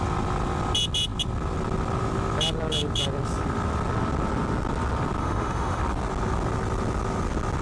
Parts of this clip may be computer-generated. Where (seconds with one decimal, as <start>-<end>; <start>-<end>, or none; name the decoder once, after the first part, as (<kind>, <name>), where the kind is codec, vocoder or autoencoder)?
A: 5.2-5.8 (autoencoder, DAC-VAE)